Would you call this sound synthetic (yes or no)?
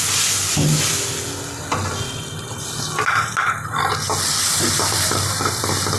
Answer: no